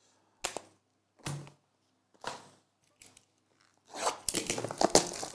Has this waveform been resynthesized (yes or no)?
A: no